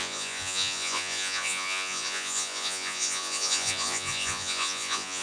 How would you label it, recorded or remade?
remade